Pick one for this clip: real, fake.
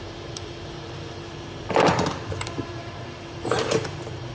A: fake